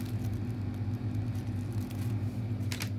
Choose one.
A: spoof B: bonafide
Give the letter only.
B